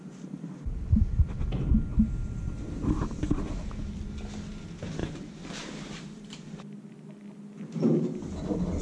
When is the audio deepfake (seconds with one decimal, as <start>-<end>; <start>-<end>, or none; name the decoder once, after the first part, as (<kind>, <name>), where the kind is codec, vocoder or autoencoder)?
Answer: 5.0-6.9 (vocoder, BigVGAN v2)